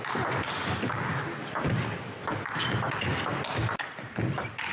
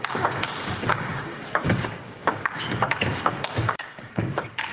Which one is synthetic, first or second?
second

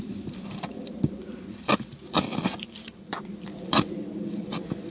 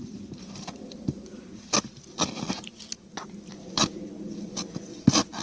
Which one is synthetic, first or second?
first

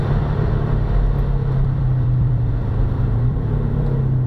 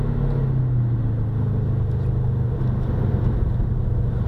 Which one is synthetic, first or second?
first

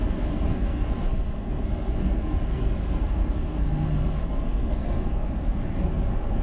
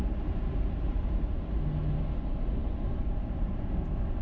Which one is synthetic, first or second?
first